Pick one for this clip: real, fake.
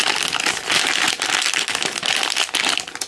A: real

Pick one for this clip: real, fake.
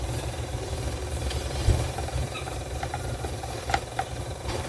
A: fake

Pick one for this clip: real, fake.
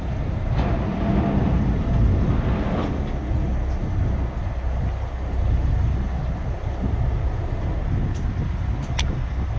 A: real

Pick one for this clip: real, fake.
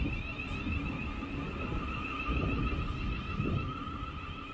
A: real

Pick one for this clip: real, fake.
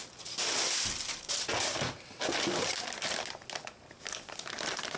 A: real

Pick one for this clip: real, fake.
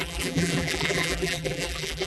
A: fake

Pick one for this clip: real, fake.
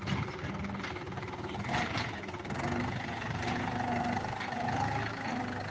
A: real